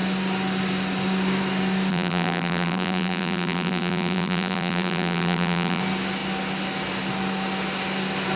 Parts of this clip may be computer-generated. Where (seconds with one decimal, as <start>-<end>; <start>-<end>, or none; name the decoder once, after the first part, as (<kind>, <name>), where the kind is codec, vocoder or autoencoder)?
1.9-5.8 (vocoder, BigVGAN v2)